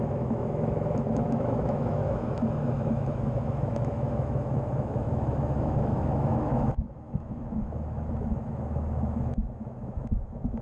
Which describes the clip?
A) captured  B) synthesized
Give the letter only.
B